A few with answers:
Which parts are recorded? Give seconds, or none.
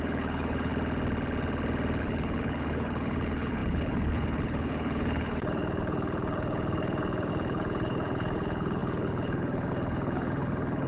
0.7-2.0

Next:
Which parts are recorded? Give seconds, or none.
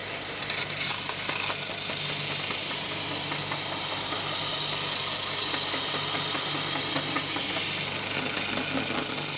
0.0-9.4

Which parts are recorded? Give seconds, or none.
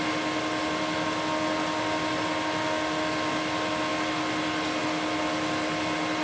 0.0-6.2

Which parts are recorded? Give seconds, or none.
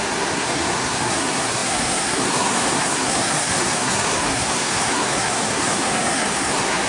none